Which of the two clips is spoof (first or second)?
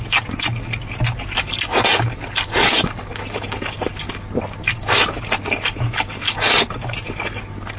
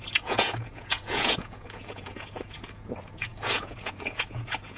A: second